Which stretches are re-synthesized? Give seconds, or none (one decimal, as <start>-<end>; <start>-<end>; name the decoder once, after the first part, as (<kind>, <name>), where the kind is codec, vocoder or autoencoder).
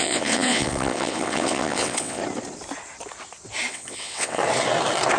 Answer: 0.0-2.2 (vocoder, WaveNeXt); 3.7-4.4